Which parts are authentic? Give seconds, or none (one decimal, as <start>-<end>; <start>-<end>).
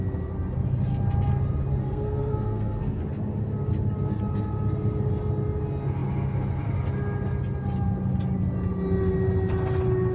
0.0-1.8; 3.0-10.1